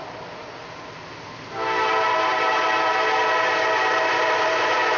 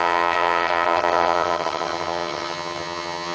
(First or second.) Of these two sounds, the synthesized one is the second